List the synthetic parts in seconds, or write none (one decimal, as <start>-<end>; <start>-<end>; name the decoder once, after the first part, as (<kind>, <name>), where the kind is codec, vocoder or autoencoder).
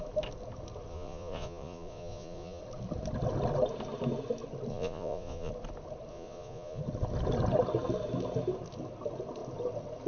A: 0.9-2.6 (vocoder, Vocos); 4.7-5.5; 6.1-6.8